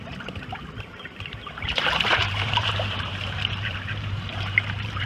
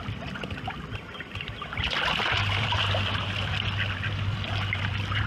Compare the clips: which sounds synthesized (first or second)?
first